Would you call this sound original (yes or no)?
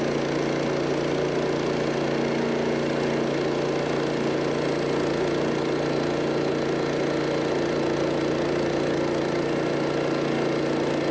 yes